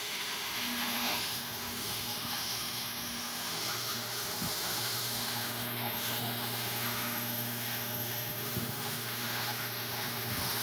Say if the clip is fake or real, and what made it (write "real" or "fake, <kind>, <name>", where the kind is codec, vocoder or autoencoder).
fake, autoencoder, DAC-VAE